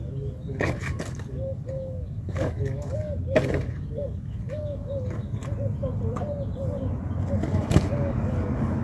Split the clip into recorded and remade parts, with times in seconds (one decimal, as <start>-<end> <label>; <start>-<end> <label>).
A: 0.0-5.4 remade; 5.4-7.4 recorded; 7.4-8.8 remade